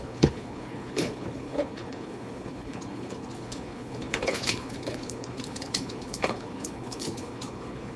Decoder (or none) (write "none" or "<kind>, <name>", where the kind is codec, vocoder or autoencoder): codec, HILCodec